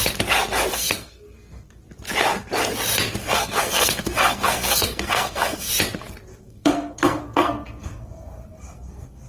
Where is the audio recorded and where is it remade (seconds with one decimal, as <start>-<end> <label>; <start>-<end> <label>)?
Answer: 0.0-0.7 recorded; 0.7-1.7 remade; 1.7-3.2 recorded; 3.2-5.7 remade; 5.7-6.4 recorded; 6.4-9.3 remade